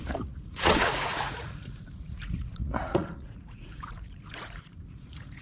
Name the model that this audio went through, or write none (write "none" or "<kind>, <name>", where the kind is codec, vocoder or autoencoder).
vocoder, Vocos